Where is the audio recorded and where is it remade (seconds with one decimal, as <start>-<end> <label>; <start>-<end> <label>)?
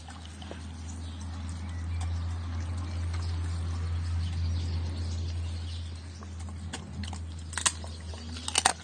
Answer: 0.0-8.8 recorded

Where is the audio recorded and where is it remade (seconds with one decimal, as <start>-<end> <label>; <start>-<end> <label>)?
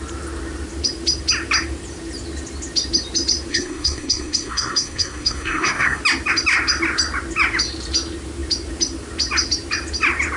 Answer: 0.0-3.5 recorded; 3.5-6.0 remade; 6.0-10.4 recorded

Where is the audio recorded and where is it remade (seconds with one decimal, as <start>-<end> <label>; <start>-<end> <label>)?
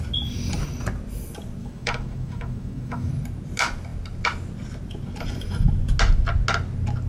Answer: 0.0-1.6 recorded; 1.6-3.1 remade; 3.1-7.1 recorded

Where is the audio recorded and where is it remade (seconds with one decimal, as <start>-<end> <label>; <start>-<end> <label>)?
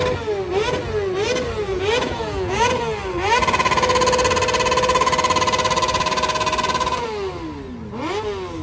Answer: 0.0-1.7 recorded; 1.7-2.7 remade; 2.7-8.6 recorded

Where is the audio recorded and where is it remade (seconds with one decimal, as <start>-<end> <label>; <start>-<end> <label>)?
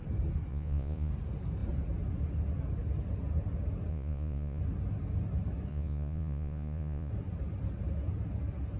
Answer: 0.0-0.5 recorded; 0.5-1.1 remade; 1.1-3.9 recorded; 3.9-4.6 remade; 4.6-5.7 recorded; 5.7-7.1 remade; 7.1-8.8 recorded